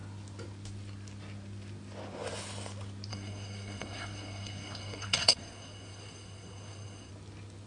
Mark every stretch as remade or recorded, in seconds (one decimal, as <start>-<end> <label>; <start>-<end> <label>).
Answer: 0.0-3.1 recorded; 3.1-7.1 remade; 7.1-7.7 recorded